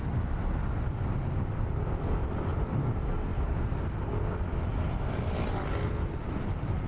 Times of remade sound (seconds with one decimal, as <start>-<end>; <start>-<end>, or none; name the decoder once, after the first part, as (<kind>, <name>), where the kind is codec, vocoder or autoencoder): none